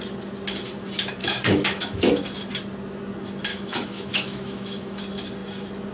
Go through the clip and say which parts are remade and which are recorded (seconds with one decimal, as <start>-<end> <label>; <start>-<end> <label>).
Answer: 0.0-1.2 recorded; 1.2-2.1 remade; 2.1-3.5 recorded; 3.5-5.0 remade; 5.0-5.9 recorded

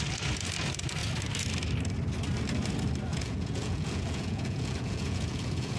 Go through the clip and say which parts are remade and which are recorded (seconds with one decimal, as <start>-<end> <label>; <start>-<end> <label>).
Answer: 0.0-3.1 recorded; 3.1-5.8 remade